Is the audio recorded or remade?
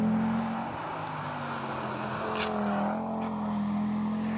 recorded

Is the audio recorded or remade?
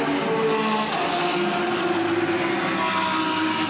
recorded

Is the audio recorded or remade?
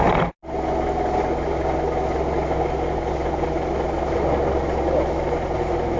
recorded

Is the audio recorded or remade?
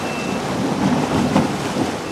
recorded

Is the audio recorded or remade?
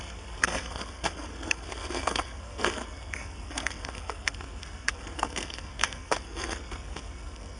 remade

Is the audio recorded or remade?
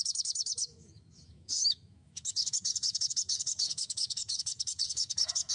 remade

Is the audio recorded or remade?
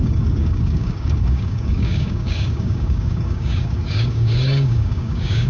remade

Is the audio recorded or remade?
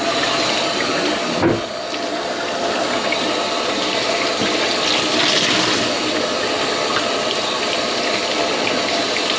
recorded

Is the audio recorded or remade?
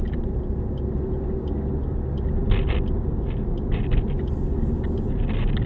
recorded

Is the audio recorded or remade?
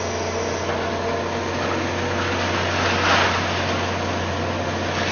recorded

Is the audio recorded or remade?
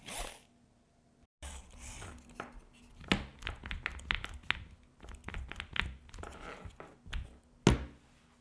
recorded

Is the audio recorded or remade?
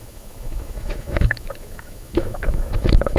remade